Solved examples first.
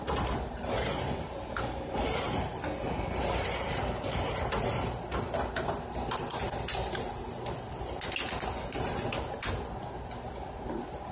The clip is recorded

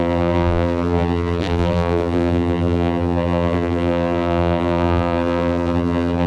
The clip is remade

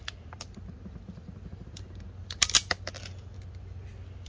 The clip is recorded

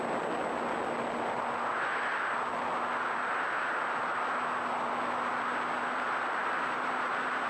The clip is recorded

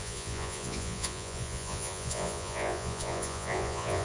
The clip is remade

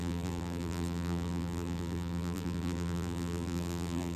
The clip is remade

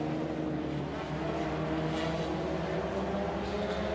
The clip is recorded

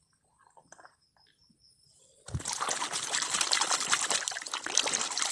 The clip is remade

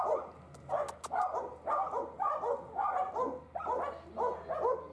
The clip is recorded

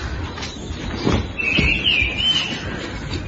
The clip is recorded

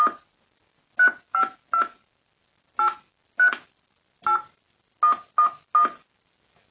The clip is recorded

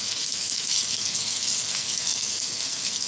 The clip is remade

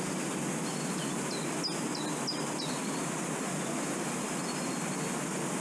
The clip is recorded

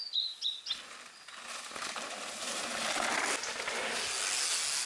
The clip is recorded